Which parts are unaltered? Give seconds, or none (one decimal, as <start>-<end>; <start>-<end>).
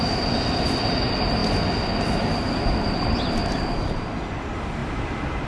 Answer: 0.0-5.5